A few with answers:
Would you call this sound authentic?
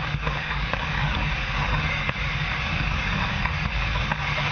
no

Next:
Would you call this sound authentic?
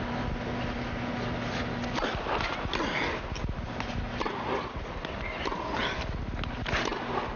yes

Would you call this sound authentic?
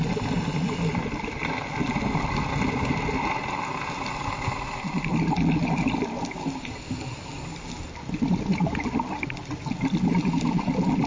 yes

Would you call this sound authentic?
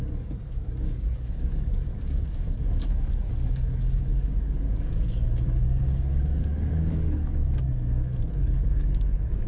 no